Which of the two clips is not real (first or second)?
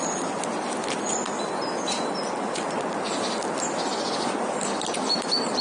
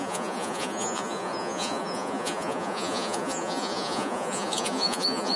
second